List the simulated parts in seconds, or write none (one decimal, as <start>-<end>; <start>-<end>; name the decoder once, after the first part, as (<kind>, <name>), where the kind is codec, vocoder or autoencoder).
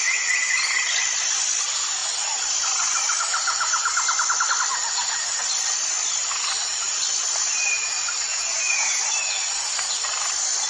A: 8.3-9.0 (vocoder, Vocos)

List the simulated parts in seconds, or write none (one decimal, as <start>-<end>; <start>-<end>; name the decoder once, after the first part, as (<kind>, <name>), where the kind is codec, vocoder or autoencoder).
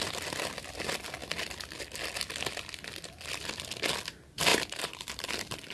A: 4.5-5.3 (vocoder, BigVGAN v2)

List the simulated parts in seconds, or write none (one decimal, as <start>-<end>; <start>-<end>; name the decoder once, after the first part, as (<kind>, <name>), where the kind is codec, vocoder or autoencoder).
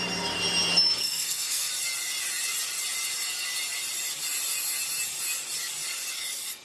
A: 1.0-1.7 (codec, SNAC)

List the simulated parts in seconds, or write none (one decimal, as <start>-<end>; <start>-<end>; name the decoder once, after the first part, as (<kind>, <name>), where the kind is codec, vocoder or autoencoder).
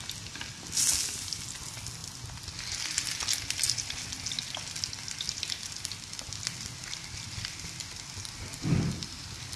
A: none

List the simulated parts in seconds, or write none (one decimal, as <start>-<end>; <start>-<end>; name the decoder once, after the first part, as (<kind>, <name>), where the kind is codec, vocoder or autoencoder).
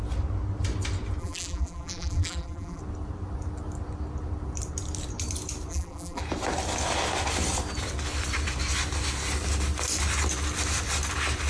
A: 1.2-2.8 (vocoder, BigVGAN v2); 5.7-6.2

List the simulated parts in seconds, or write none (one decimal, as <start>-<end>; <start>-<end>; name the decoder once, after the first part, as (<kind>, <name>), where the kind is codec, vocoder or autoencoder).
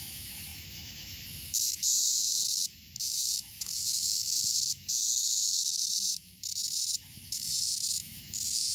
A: 0.0-8.7 (autoencoder, DAC-VAE)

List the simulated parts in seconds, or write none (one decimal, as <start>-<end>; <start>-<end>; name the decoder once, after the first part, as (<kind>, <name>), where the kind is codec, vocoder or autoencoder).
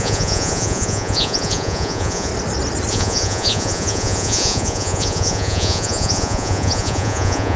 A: 0.0-2.3 (vocoder, Vocos); 2.9-7.6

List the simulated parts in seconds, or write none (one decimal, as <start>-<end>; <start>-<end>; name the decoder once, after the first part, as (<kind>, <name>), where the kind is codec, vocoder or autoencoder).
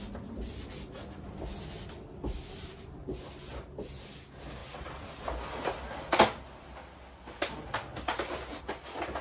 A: none